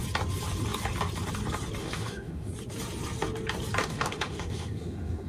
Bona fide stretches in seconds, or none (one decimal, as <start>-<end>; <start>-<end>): 0.0-1.8; 2.5-3.8